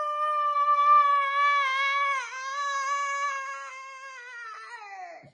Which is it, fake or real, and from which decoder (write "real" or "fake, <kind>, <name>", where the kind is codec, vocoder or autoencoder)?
real